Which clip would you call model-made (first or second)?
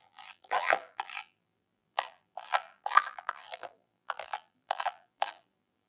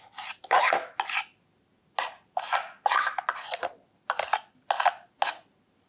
first